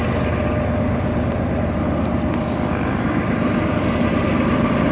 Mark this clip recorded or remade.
recorded